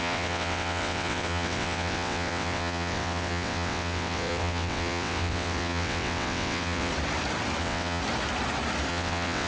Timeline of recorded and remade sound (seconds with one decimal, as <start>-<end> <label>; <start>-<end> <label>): 0.0-6.9 remade; 6.9-7.6 recorded; 7.6-8.0 remade; 8.0-8.9 recorded; 8.9-9.5 remade